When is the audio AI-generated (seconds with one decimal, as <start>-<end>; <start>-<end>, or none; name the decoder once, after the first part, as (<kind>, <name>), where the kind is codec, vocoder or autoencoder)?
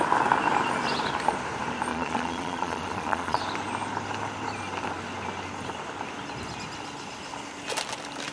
1.9-3.4 (vocoder, Vocos)